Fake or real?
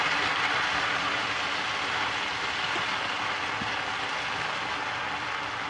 real